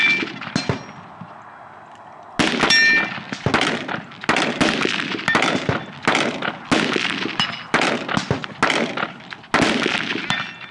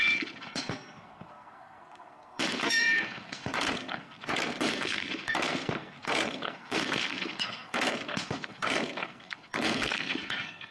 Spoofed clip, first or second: second